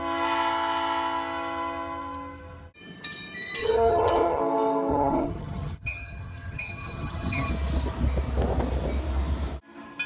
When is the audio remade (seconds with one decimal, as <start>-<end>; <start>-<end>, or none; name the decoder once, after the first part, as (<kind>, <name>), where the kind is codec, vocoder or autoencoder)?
3.6-4.4 (vocoder, HiFi-GAN); 4.9-7.5